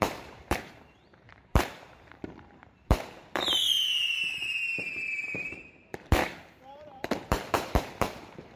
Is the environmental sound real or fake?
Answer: fake